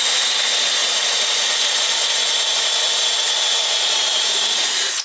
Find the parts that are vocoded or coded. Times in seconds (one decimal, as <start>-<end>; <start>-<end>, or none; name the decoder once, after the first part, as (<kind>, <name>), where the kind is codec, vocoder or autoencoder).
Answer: 0.0-5.0 (vocoder, Vocos)